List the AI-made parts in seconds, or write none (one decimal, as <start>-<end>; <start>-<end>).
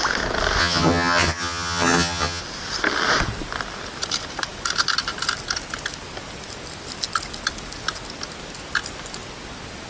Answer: 0.6-2.4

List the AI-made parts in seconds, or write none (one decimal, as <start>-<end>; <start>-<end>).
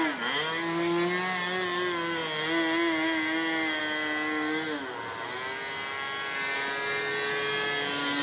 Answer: none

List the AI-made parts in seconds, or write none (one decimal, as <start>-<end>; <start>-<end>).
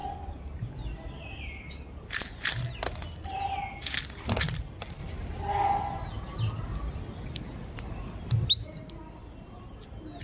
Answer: none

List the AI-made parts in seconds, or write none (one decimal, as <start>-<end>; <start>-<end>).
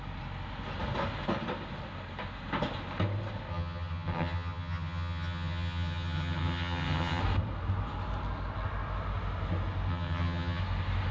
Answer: 3.5-7.2; 9.9-10.6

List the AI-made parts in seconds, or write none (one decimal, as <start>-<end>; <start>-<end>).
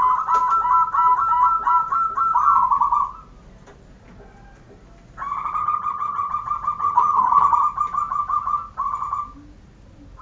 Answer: 5.6-6.3; 6.8-7.6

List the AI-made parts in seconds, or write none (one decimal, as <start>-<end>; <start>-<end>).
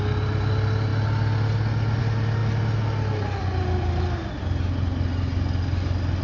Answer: none